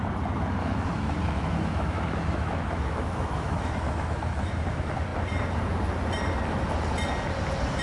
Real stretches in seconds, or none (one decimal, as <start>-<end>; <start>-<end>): 0.0-0.6; 4.5-7.8